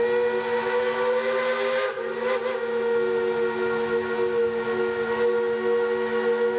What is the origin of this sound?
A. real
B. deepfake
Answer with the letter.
A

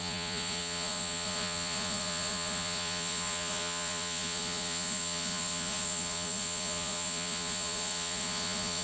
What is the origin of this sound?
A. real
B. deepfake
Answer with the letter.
B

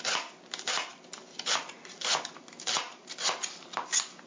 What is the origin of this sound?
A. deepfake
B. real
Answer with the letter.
B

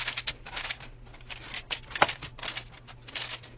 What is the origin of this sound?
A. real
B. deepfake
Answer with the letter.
A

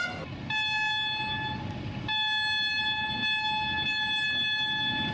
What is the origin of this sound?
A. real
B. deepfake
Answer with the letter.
A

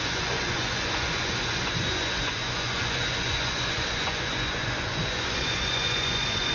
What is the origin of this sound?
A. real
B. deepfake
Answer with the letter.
B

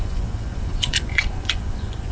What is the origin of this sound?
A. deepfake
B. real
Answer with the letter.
A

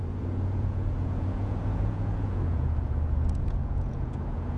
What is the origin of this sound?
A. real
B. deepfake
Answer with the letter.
B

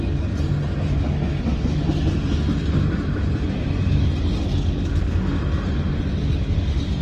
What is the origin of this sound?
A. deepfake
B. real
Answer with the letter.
B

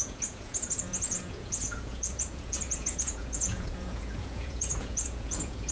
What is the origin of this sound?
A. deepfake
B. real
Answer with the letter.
A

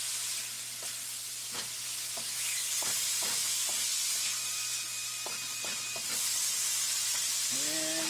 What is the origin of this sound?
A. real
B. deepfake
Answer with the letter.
A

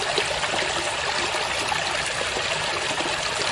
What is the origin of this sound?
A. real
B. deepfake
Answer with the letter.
A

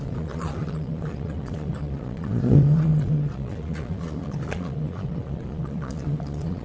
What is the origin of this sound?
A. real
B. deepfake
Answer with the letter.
B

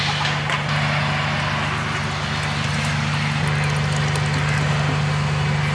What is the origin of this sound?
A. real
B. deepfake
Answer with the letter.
A